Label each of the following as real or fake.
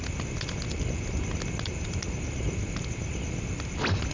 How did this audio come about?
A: real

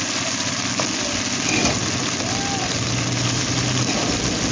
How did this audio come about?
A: real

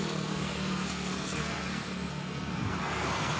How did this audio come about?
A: fake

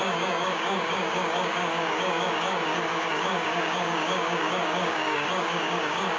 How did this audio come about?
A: fake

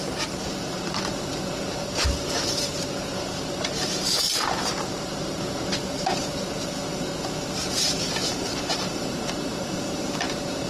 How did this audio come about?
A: fake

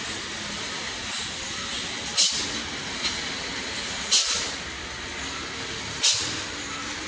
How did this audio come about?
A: real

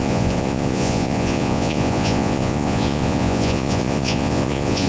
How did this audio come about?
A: fake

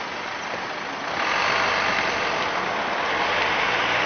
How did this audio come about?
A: real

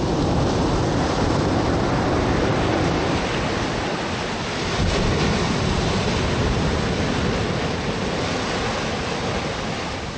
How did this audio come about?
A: real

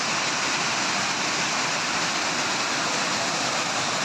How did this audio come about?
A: real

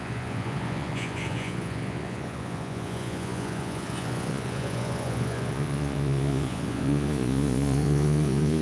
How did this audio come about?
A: fake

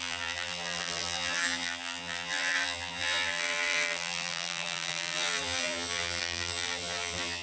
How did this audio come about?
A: fake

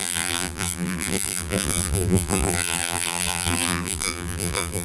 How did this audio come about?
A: fake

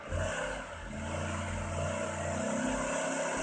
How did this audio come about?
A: real